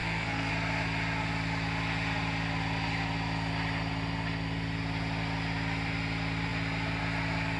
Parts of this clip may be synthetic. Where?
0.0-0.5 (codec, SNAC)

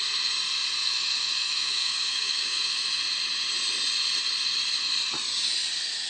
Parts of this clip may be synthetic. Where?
0.8-3.0 (autoencoder, DAC-VAE)